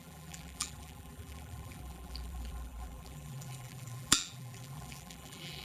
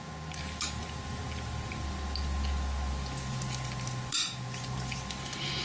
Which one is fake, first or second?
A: first